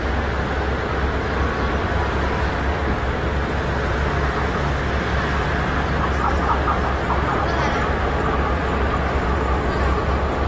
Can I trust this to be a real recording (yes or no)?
yes